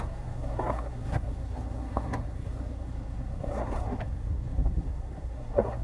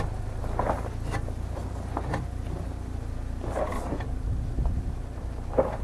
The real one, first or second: second